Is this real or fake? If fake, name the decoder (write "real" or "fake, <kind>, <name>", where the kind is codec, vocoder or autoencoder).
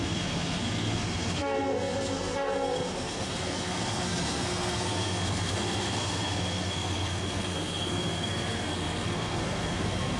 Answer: fake, codec, SNAC